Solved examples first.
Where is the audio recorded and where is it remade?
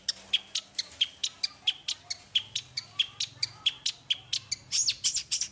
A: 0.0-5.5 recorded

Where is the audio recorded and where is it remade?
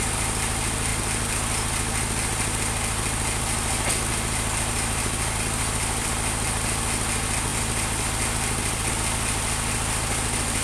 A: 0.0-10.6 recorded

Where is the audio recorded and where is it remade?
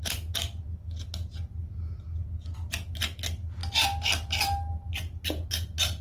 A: 0.0-6.0 recorded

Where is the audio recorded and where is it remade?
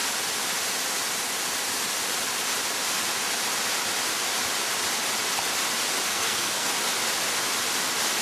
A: 0.0-6.1 recorded; 6.1-6.7 remade; 6.7-8.2 recorded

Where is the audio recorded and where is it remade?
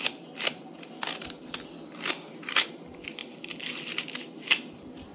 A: 0.0-5.1 recorded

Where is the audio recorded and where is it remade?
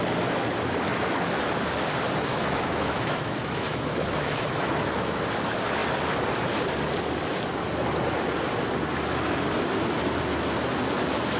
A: 0.0-0.9 recorded; 0.9-1.4 remade; 1.4-2.3 recorded; 2.3-5.3 remade; 5.3-11.4 recorded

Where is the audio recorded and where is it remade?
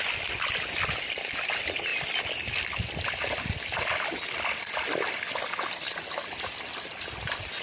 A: 0.0-7.6 recorded